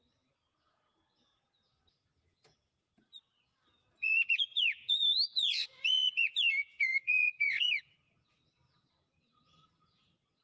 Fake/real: fake